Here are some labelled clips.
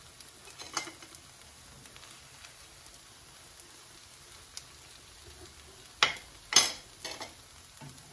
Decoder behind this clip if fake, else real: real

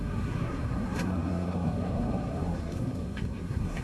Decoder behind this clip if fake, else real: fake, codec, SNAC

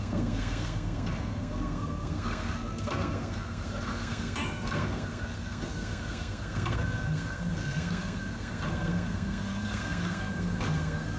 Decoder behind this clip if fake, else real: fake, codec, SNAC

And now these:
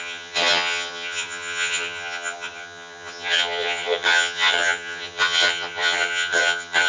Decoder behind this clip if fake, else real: fake, vocoder, HiFi-GAN